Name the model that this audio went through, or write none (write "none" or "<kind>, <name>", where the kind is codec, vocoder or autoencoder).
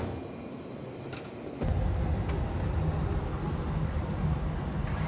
none